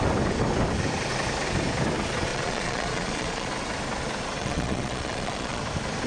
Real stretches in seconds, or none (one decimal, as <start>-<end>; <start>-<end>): 0.0-2.3; 3.5-4.4; 5.6-6.1